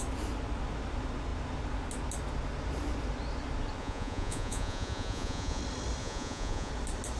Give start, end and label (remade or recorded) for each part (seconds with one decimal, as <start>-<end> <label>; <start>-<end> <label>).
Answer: 0.0-3.8 recorded; 3.8-5.6 remade; 5.6-6.0 recorded; 6.0-6.7 remade; 6.7-7.2 recorded